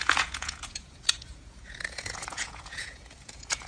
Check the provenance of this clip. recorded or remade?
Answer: remade